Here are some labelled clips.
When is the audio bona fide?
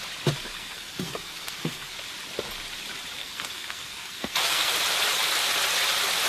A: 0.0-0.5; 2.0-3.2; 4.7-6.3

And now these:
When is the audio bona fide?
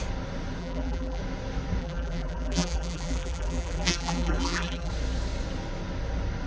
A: 0.0-0.6; 1.2-1.8; 4.9-6.5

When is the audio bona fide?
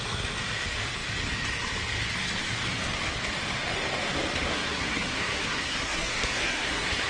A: 0.0-4.5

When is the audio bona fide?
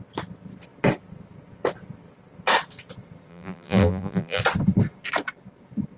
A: 0.0-3.3; 4.4-6.0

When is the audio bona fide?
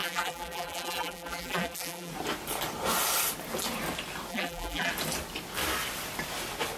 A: 2.1-4.3; 4.9-6.8